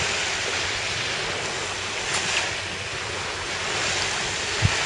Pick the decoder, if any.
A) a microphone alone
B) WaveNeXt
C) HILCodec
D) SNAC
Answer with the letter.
A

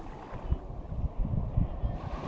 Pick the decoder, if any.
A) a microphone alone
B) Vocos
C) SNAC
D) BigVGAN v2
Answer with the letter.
A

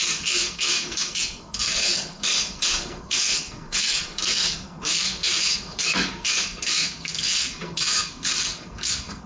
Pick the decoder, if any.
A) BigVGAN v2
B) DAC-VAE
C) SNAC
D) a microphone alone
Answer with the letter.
C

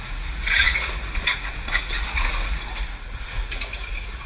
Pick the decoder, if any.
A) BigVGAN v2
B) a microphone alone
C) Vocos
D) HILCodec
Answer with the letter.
C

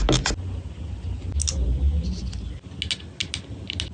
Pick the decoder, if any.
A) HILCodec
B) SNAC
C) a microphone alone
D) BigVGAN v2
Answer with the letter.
C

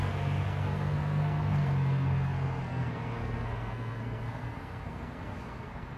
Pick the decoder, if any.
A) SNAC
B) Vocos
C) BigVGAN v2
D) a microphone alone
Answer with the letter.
A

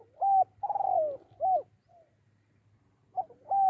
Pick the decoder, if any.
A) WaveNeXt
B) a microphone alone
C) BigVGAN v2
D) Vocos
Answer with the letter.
B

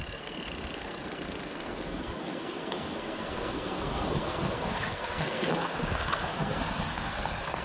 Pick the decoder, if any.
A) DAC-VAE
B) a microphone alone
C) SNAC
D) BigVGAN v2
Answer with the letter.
C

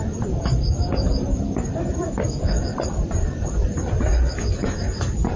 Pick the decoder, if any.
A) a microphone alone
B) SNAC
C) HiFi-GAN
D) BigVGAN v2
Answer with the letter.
D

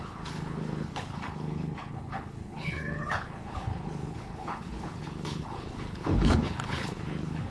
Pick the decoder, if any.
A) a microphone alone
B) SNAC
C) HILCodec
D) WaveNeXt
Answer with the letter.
C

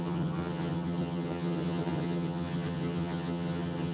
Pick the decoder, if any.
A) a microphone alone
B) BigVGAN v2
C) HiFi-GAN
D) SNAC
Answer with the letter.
C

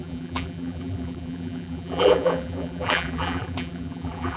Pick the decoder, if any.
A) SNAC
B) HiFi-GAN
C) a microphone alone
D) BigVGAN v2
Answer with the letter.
D